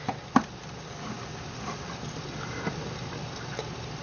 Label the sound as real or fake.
real